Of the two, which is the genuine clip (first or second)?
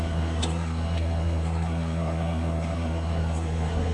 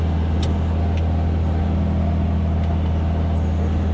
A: second